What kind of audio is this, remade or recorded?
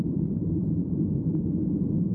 remade